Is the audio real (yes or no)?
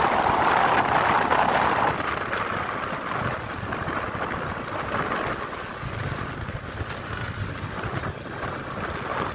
yes